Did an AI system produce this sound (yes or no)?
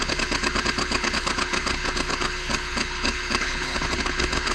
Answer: yes